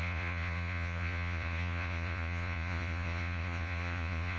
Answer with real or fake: fake